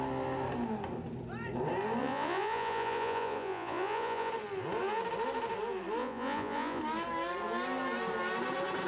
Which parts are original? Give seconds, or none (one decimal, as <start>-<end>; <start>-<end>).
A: 0.0-2.0; 4.3-6.0; 6.8-8.9